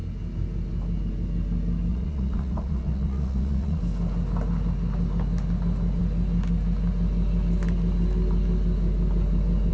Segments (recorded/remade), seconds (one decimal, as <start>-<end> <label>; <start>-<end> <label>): 0.0-1.9 recorded; 1.9-3.8 remade; 3.8-9.7 recorded